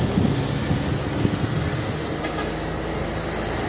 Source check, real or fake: real